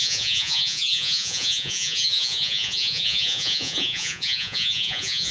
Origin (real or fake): fake